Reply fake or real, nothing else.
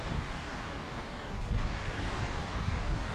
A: fake